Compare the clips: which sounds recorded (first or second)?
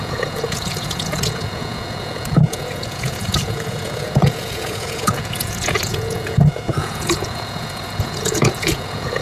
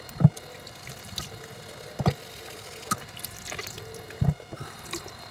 second